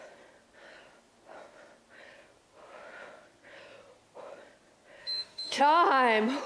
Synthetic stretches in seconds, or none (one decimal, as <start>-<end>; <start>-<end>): 5.0-5.6